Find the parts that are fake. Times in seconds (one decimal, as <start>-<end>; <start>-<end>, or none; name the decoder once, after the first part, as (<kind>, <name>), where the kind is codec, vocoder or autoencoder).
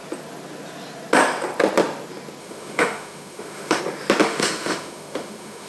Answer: 2.4-3.8 (autoencoder, DAC-VAE); 4.2-5.7